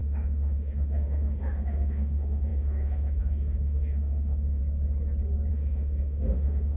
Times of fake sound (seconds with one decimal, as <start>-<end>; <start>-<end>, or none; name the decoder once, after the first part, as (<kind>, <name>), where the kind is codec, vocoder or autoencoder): 0.0-4.6 (autoencoder, DAC-VAE); 5.5-6.8